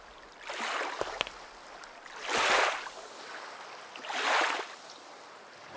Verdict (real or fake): real